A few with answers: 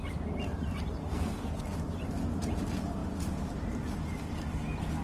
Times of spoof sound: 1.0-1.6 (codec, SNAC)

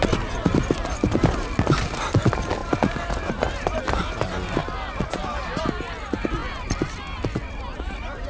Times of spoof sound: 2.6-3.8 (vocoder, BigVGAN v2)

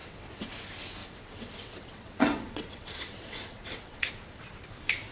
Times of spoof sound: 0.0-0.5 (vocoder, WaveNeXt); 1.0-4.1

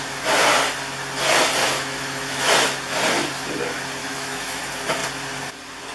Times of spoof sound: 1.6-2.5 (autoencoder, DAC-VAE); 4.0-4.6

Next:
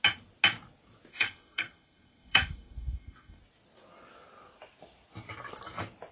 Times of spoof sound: 1.1-3.4 (codec, SNAC)